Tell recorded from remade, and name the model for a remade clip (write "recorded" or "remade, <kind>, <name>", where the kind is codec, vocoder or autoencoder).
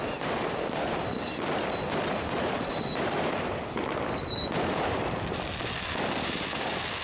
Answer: recorded